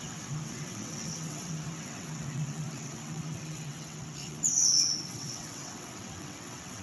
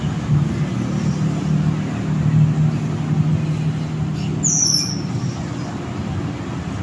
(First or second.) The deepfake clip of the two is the first